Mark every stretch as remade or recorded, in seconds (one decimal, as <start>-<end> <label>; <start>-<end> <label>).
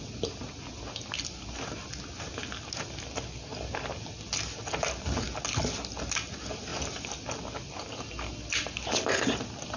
0.0-9.8 recorded